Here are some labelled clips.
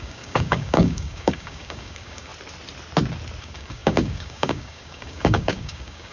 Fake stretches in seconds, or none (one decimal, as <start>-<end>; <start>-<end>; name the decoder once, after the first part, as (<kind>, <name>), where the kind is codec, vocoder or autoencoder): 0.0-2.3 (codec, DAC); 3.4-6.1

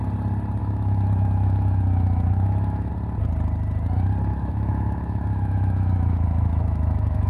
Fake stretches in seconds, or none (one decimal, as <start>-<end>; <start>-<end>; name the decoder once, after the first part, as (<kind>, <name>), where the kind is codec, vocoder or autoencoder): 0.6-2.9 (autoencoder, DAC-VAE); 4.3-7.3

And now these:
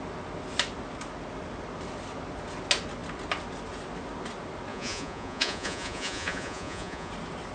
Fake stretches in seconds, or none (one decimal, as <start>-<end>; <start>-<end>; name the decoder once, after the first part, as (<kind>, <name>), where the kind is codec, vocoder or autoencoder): 4.7-7.1 (vocoder, Vocos)

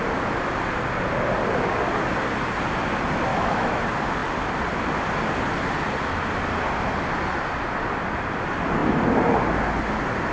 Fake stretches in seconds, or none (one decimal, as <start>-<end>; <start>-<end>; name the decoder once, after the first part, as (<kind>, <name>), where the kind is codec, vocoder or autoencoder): 3.3-3.8 (autoencoder, DAC-VAE)

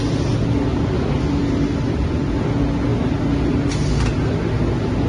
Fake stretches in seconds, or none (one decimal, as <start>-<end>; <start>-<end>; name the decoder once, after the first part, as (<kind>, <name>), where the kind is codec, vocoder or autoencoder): none

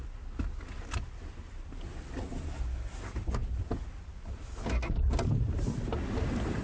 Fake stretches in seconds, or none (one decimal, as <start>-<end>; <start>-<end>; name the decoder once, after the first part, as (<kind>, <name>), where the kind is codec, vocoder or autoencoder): none

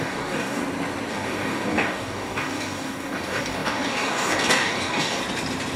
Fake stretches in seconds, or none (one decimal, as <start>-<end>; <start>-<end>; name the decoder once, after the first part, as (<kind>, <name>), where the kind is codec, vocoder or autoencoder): 0.0-0.6 (codec, DAC); 1.1-5.2